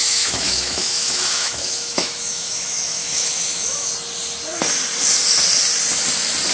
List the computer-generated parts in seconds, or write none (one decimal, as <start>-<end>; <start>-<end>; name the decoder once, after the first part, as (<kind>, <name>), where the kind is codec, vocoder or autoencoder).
0.0-3.9 (autoencoder, DAC-VAE)